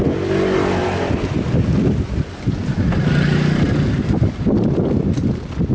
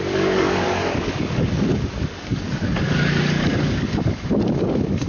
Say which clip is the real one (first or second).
first